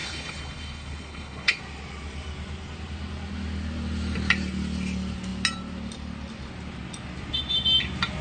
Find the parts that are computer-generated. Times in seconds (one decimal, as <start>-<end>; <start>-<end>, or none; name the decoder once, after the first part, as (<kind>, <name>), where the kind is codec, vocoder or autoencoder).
0.0-1.6 (codec, HILCodec)